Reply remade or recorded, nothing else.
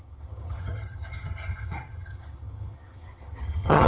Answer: remade